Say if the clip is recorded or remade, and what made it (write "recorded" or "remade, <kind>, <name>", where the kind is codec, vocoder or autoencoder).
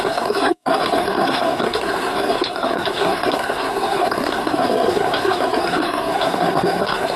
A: remade, codec, SNAC